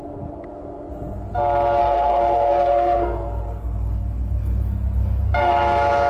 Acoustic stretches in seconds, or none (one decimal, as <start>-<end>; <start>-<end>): 0.0-1.8; 5.5-6.1